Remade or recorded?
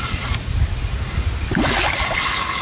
recorded